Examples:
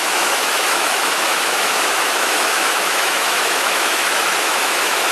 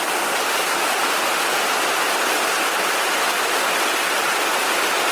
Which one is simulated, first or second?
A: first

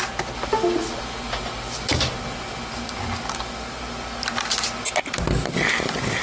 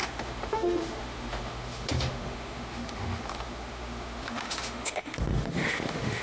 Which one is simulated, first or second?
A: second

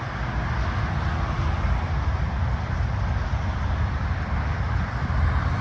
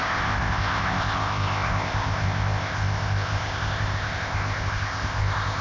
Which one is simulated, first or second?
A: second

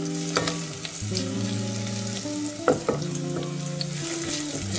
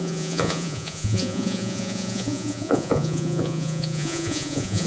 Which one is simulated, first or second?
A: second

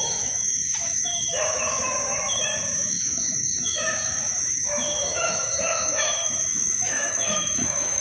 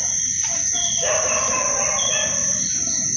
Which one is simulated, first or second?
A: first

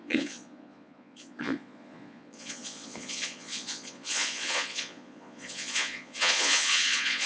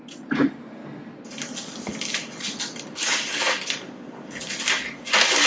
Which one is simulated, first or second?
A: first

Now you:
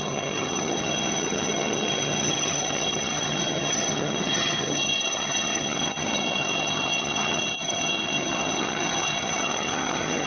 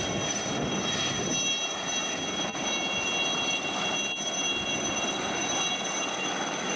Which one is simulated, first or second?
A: first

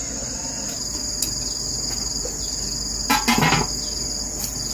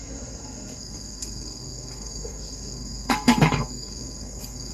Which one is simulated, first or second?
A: second